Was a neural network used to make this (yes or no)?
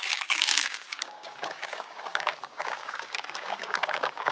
yes